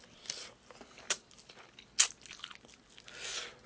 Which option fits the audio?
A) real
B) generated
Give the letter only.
A